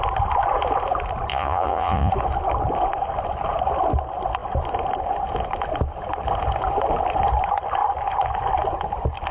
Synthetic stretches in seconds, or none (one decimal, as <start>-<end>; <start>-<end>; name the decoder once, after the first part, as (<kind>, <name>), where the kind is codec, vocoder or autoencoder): 1.3-2.1 (vocoder, Vocos)